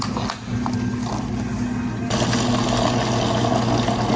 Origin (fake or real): real